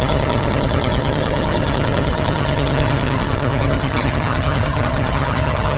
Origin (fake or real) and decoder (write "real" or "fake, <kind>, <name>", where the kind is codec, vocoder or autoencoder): fake, vocoder, HiFi-GAN